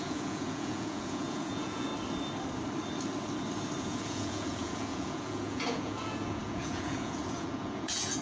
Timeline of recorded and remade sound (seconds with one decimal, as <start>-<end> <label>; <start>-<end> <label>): 0.0-1.9 remade; 1.9-3.8 recorded; 3.8-8.2 remade